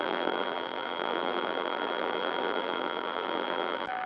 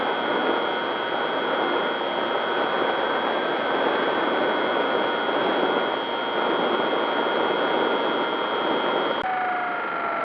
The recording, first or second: second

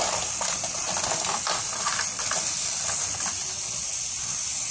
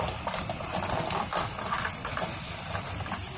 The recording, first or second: first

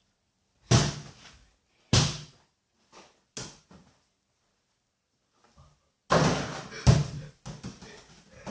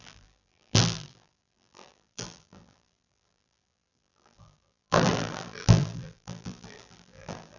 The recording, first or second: first